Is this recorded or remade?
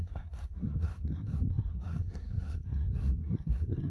remade